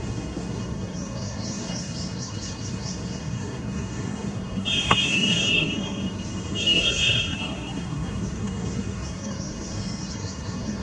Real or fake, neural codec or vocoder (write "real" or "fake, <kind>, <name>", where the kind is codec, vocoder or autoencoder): fake, codec, SNAC